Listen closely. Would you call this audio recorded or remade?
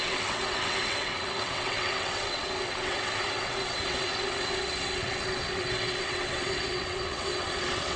remade